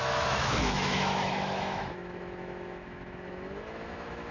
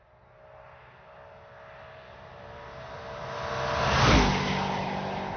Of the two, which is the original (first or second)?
second